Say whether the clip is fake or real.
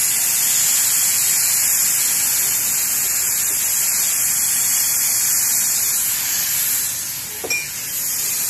real